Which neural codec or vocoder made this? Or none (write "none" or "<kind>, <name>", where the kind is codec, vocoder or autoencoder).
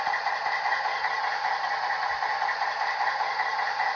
none